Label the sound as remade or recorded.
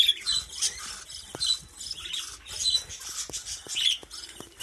recorded